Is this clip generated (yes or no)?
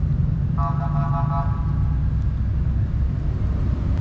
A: no